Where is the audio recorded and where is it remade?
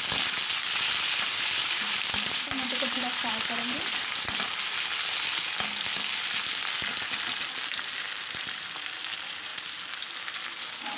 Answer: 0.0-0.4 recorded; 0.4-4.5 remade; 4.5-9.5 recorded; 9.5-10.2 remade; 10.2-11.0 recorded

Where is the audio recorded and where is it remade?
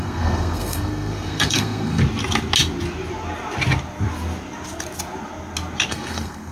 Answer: 0.0-2.0 remade; 2.0-5.9 recorded; 5.9-6.5 remade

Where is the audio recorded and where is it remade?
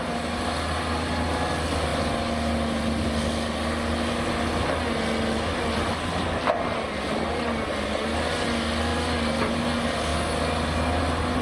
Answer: 0.0-11.4 recorded